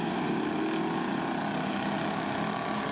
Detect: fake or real real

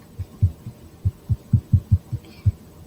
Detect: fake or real real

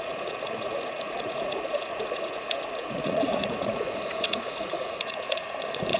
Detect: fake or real fake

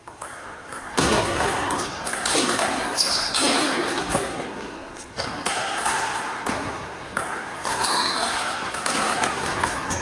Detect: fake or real fake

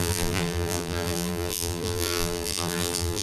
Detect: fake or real fake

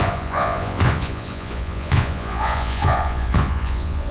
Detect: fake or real fake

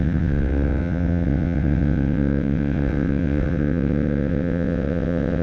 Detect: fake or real fake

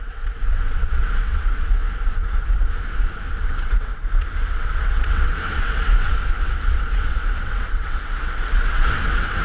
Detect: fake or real fake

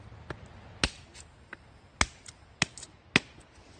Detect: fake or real real